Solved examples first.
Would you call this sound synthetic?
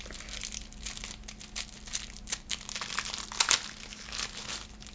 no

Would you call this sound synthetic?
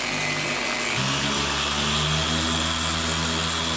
no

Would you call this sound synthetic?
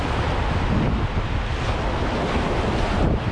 no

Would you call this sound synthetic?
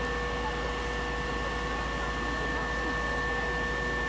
no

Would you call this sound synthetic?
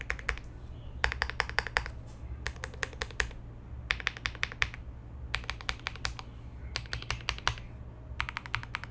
no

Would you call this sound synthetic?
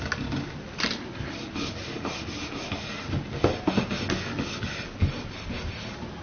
no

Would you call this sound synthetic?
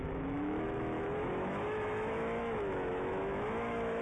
yes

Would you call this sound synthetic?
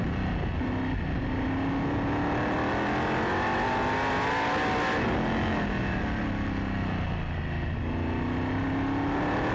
no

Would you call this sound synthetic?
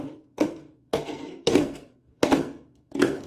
yes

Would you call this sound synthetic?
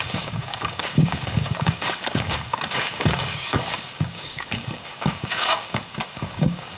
yes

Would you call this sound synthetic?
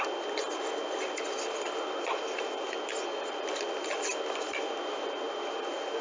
no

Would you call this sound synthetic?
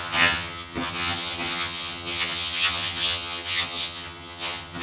yes